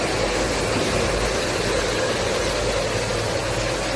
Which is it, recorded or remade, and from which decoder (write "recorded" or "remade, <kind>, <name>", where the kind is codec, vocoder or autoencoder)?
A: recorded